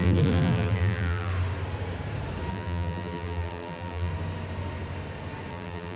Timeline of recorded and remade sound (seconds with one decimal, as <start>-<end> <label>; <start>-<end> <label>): 0.0-1.3 remade; 1.3-2.5 recorded; 2.5-4.1 remade; 4.1-5.5 recorded; 5.5-6.0 remade

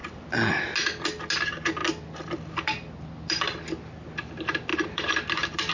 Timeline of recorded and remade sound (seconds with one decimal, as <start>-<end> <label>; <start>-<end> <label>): 0.0-4.7 recorded; 4.7-5.7 remade